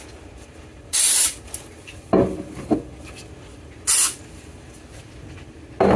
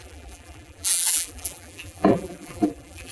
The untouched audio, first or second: first